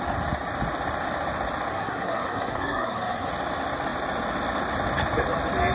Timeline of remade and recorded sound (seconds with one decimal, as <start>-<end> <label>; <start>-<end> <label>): 0.0-1.7 recorded; 1.7-3.3 remade; 3.3-5.7 recorded